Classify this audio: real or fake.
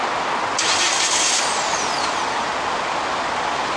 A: real